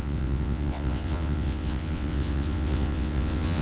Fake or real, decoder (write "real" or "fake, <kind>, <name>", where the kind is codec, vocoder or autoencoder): fake, vocoder, WaveNeXt